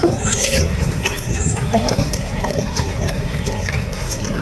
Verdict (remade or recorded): remade